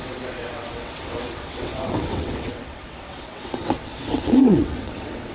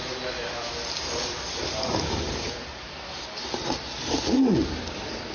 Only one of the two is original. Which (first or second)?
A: second